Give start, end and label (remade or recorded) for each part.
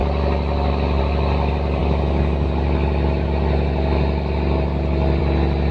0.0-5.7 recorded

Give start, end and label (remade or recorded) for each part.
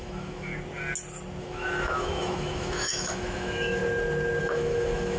0.0-0.5 remade; 0.5-1.4 recorded; 1.4-3.8 remade; 3.8-4.4 recorded; 4.4-5.2 remade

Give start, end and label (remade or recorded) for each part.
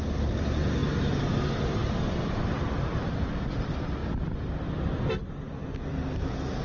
0.0-6.6 recorded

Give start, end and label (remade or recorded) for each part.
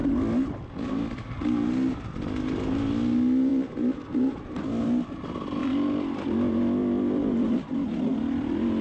0.0-8.8 recorded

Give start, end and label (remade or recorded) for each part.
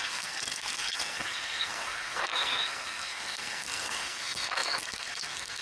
0.0-5.6 remade